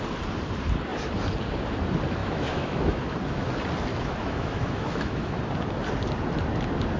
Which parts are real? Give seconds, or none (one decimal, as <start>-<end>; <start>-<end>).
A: 0.0-2.2; 3.0-3.9; 5.4-7.0